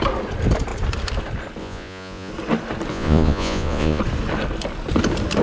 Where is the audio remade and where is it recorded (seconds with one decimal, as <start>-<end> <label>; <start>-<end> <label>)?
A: 0.0-1.6 recorded; 1.6-2.3 remade; 2.3-2.9 recorded; 2.9-4.0 remade; 4.0-5.4 recorded